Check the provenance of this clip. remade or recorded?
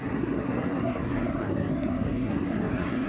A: remade